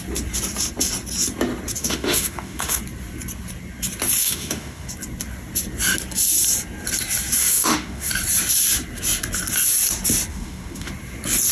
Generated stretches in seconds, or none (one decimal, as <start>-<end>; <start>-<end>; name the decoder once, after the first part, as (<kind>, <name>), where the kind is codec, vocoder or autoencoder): 1.8-2.8 (autoencoder, DAC-VAE); 4.2-4.9; 7.4-8.1; 10.3-10.9